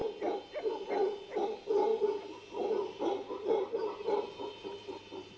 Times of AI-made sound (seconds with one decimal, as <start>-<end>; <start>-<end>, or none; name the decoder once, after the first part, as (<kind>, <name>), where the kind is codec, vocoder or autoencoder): 1.9-5.4 (vocoder, BigVGAN v2)